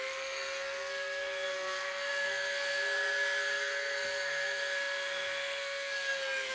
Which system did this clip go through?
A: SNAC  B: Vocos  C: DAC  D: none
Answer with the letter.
A